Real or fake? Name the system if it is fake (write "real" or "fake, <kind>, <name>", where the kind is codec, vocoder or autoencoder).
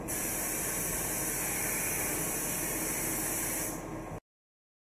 real